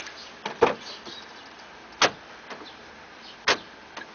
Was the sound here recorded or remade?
recorded